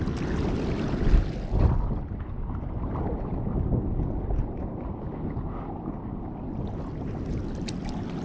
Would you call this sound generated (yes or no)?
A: no